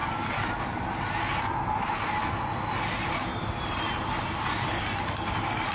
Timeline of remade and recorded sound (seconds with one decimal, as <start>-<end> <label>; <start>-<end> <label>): 0.0-5.7 recorded